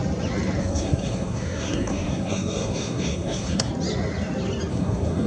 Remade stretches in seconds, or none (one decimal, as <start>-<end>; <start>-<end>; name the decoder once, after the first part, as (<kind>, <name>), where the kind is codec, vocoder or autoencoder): 0.6-3.7 (codec, SNAC); 4.7-5.3